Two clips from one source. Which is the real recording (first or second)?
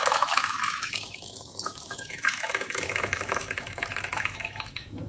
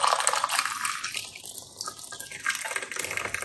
second